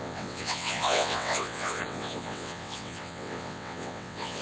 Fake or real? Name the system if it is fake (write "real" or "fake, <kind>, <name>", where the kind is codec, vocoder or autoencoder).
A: fake, vocoder, WaveNeXt